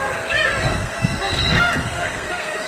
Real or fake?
fake